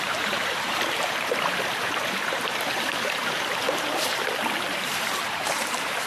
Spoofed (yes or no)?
yes